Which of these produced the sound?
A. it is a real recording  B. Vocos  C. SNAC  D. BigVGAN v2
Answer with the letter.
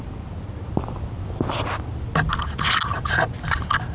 A